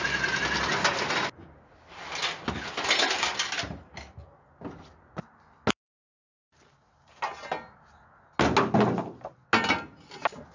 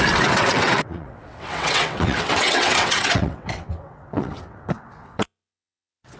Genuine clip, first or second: first